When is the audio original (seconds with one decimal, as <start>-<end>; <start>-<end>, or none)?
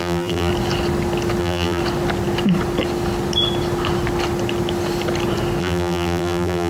0.5-1.4; 1.8-5.6